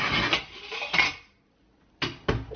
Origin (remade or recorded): recorded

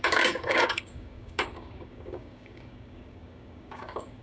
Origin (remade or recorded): remade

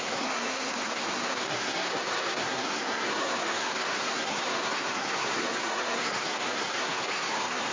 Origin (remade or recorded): remade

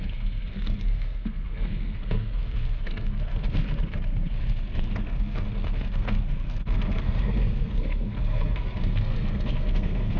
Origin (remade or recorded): remade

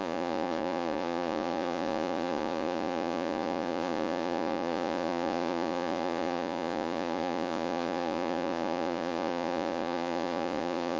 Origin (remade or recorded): remade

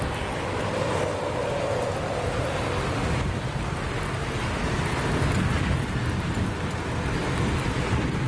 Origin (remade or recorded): recorded